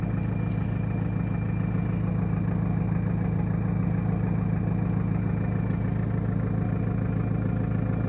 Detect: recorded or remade recorded